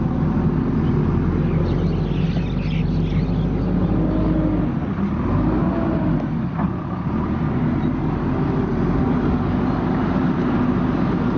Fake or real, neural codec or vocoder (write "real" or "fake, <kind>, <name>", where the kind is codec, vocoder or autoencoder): real